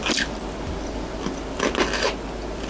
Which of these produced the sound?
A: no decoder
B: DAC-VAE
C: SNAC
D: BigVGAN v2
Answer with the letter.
A